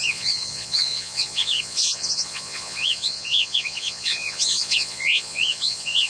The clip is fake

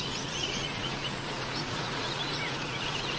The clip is fake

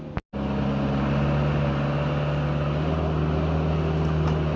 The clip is real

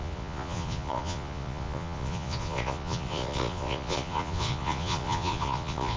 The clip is fake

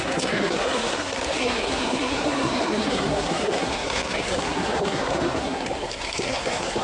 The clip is fake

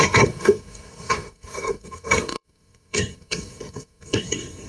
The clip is fake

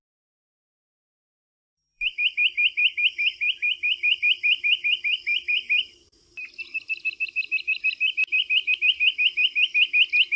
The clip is real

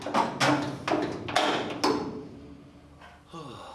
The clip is real